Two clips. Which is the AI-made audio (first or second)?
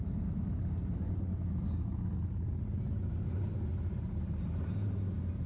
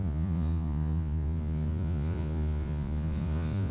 second